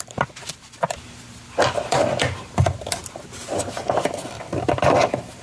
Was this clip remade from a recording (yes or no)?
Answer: yes